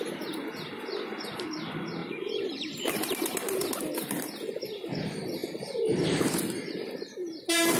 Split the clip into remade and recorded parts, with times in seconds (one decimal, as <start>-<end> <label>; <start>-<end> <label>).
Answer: 0.0-2.0 recorded; 2.0-3.0 remade; 3.0-5.4 recorded; 5.4-6.9 remade; 6.9-7.8 recorded